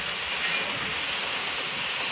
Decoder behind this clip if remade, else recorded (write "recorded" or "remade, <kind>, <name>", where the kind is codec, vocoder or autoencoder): recorded